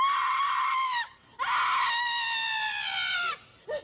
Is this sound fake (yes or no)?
no